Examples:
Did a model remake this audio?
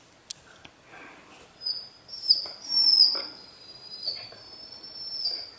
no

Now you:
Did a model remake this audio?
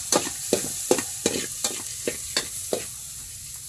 no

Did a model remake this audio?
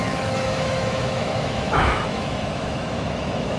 yes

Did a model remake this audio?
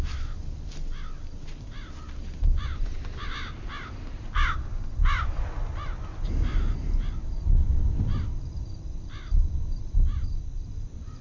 no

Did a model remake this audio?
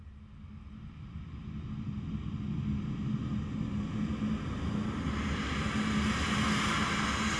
no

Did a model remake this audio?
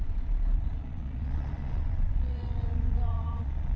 yes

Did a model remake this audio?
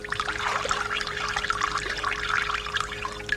no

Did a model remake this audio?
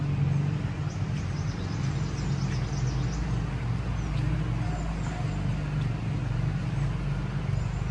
no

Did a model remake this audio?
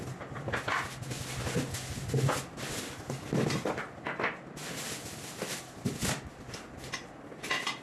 no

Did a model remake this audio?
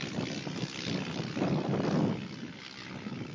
no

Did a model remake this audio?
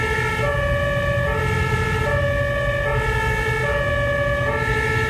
no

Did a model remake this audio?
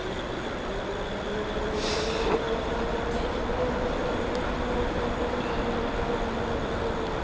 no